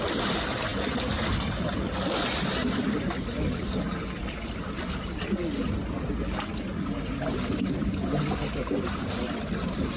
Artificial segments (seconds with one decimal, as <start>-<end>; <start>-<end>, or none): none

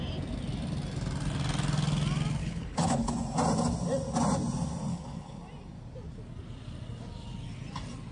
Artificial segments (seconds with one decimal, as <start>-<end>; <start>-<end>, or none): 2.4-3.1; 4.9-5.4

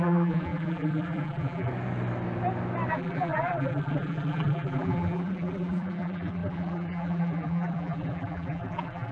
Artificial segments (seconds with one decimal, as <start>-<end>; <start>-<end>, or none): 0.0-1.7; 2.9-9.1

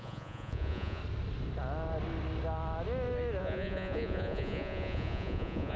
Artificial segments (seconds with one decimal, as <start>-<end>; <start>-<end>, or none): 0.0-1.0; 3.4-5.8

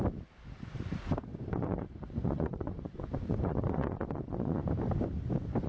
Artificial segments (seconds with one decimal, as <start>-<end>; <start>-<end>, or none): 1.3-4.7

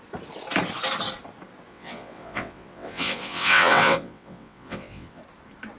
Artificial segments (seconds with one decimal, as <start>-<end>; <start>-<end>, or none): 1.7-5.2